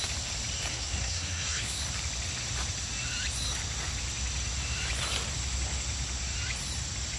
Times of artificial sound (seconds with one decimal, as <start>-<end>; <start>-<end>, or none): 0.7-1.8